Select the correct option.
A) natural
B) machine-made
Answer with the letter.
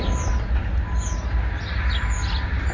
A